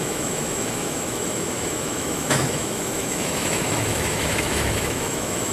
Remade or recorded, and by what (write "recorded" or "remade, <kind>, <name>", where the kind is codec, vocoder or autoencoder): remade, autoencoder, DAC-VAE